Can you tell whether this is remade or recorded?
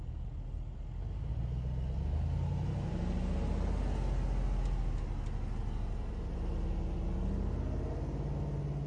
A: recorded